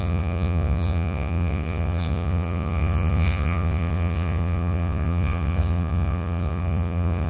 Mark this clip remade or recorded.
remade